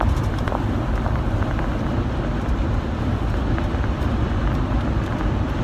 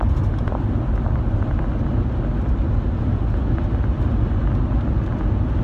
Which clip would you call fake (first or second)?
first